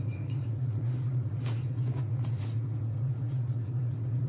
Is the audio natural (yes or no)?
no